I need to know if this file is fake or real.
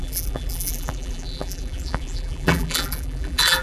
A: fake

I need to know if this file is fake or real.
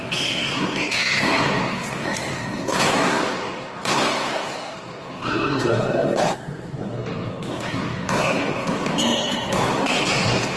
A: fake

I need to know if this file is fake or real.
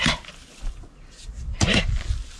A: real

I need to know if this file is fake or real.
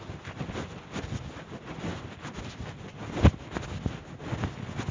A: real